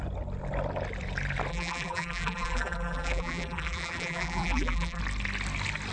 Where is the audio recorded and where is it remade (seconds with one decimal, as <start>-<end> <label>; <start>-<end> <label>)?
0.0-1.5 recorded; 1.5-5.0 remade; 5.0-5.9 recorded